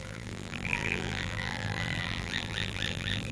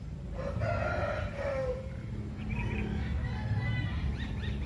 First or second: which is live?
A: second